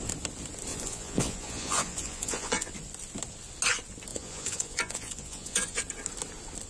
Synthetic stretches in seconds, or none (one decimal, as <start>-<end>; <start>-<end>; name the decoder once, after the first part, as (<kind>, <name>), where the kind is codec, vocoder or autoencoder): 0.7-2.7 (vocoder, Vocos); 4.1-5.8